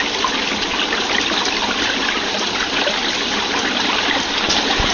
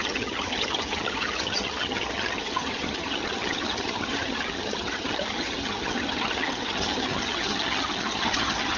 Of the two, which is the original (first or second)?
first